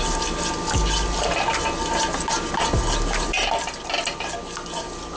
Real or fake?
real